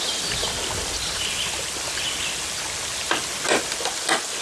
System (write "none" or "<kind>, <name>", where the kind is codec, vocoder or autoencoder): none